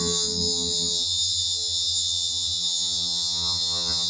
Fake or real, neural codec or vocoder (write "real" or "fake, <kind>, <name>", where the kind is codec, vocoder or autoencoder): fake, vocoder, HiFi-GAN